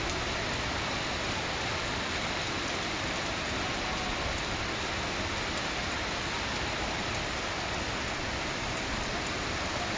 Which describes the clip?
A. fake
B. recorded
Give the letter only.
B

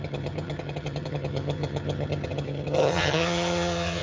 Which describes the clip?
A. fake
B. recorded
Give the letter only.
A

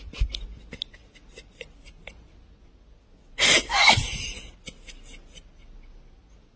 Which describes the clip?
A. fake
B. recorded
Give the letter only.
B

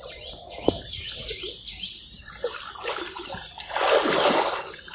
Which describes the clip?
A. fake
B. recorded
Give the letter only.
B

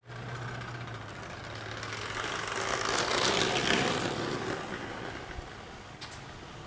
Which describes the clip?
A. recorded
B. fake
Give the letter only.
A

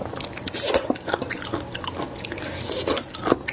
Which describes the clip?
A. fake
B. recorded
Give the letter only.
B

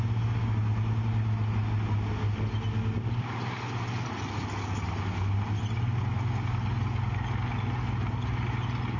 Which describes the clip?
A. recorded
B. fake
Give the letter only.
A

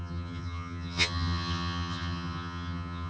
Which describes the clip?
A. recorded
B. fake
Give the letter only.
B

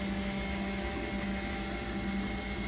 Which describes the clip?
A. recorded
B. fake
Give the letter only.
A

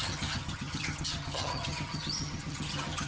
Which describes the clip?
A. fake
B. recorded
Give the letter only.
A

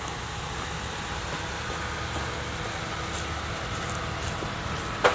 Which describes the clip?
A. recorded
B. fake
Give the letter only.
A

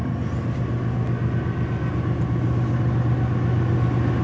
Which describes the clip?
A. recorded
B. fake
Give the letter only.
A